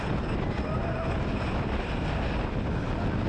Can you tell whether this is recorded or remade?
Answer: recorded